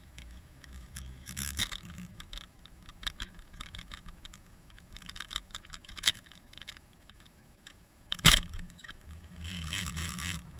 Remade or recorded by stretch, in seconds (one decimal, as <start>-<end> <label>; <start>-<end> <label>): 0.0-10.6 remade